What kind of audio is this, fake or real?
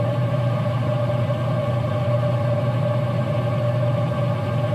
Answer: real